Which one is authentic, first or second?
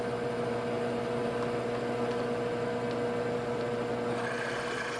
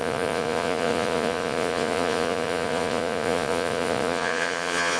first